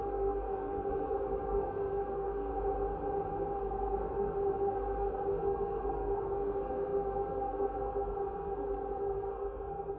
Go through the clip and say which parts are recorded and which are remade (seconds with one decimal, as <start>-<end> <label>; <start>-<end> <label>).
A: 0.0-2.5 remade; 2.5-3.3 recorded; 3.3-10.0 remade